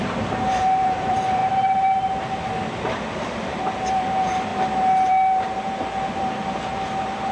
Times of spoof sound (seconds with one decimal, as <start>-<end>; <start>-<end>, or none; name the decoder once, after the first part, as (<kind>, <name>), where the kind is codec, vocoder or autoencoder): 0.0-1.4 (vocoder, BigVGAN v2); 3.1-4.5; 5.1-7.3